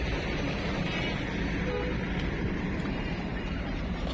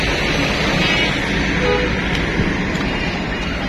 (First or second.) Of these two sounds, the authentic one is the second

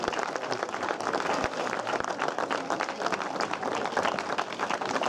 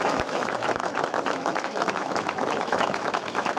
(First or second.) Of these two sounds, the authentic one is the first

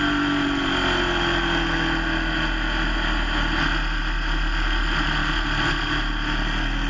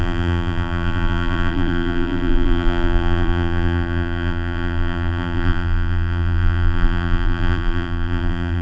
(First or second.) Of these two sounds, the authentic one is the first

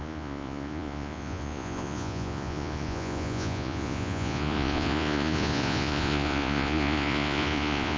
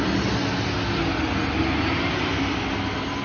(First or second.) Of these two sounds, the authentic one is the second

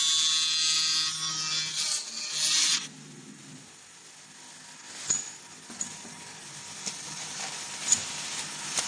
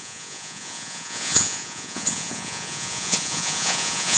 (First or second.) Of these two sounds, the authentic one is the first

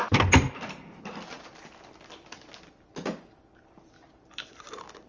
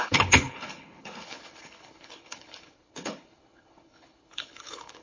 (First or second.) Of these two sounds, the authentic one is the first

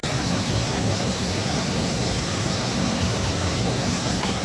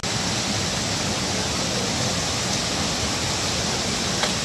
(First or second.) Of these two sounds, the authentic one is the second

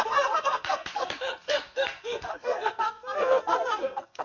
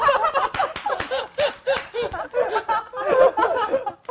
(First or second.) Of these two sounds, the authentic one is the second